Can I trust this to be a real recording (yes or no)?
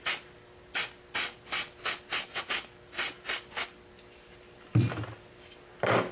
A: yes